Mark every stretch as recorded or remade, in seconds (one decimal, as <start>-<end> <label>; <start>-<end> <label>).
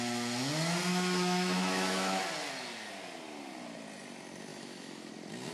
0.0-0.9 recorded; 0.9-2.2 remade; 2.2-4.5 recorded; 4.5-5.1 remade; 5.1-5.5 recorded